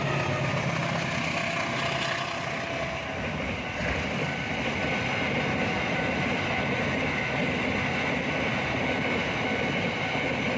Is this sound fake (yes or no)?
no